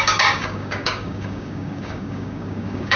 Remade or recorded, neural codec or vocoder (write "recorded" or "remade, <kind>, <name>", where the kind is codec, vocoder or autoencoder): remade, codec, DAC